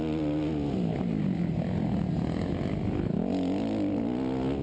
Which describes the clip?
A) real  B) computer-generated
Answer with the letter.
A